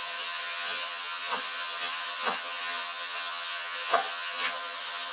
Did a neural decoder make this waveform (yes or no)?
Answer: yes